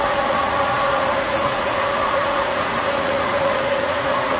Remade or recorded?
remade